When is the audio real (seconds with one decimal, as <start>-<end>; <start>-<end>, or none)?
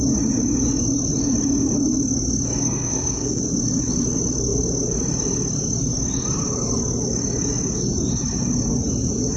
0.0-2.6; 3.4-9.4